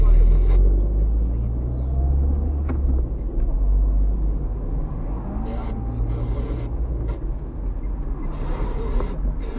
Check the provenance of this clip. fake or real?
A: real